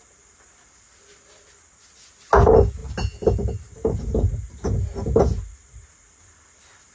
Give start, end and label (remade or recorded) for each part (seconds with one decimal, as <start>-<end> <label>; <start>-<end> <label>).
0.0-6.9 recorded